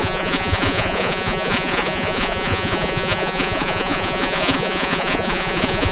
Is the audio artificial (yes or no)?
yes